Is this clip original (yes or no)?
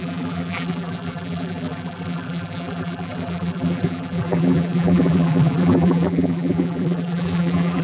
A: no